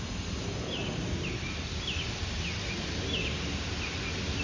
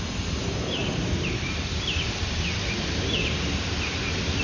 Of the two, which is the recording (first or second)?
first